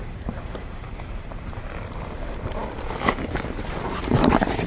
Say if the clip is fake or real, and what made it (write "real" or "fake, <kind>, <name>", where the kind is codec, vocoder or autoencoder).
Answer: fake, vocoder, BigVGAN v2